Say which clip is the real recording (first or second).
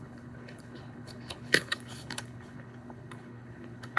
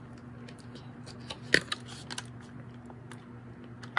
second